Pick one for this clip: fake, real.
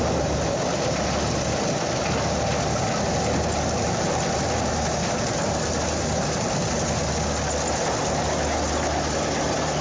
real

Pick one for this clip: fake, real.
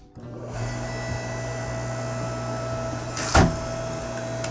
real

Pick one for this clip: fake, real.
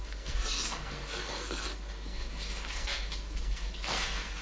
fake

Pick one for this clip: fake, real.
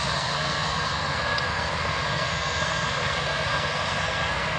fake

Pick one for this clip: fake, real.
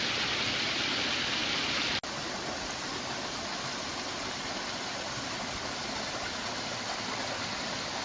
real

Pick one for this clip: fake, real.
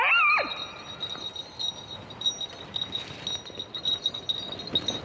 real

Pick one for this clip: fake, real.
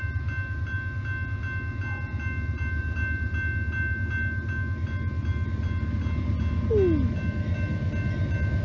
real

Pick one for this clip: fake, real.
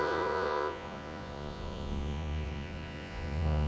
fake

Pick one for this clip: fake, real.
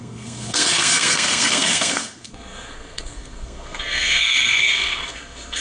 fake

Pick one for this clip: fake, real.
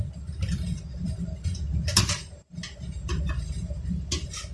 real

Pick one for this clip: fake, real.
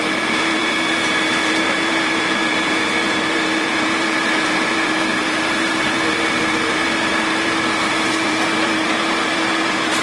fake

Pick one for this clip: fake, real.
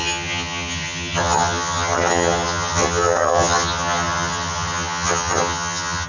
fake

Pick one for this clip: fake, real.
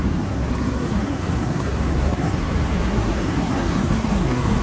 fake